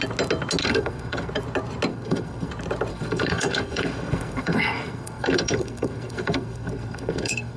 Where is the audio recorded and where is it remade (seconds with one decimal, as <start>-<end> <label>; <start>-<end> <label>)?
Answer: 0.0-0.6 recorded; 0.6-1.3 remade; 1.3-1.9 recorded; 1.9-2.5 remade; 2.5-2.9 recorded; 2.9-7.6 remade

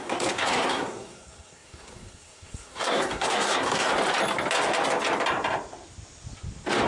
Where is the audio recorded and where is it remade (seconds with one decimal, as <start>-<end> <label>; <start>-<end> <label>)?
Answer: 0.0-3.9 remade; 3.9-6.9 recorded